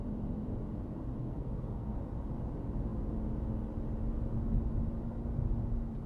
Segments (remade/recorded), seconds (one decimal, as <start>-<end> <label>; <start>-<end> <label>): 0.0-1.2 recorded; 1.2-2.0 remade; 2.0-6.1 recorded